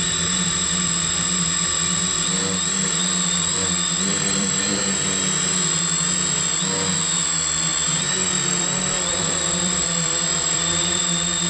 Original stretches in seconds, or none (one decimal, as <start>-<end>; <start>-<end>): 0.0-4.1; 4.8-7.7; 11.0-11.5